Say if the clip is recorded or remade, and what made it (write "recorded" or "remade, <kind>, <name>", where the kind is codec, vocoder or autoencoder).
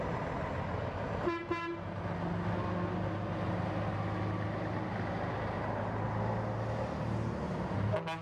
recorded